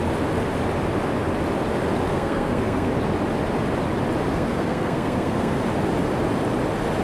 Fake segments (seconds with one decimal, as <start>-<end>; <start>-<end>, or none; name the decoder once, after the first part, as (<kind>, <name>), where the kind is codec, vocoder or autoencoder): 2.1-2.9 (codec, SNAC); 4.3-5.6